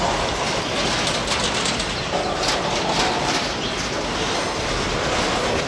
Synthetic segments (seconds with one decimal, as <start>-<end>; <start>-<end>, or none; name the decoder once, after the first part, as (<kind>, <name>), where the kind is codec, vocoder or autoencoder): none